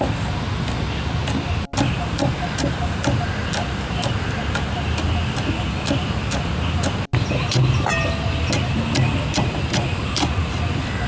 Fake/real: real